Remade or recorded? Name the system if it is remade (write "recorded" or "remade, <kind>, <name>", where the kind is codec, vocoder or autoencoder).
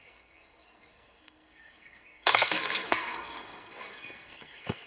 remade, codec, SNAC